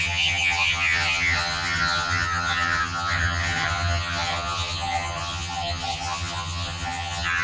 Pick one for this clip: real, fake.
fake